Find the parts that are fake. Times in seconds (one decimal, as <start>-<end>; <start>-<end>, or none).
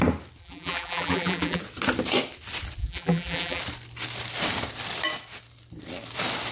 0.4-1.6; 2.8-3.6